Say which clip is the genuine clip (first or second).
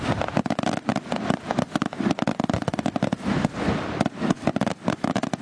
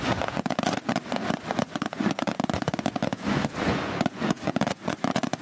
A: first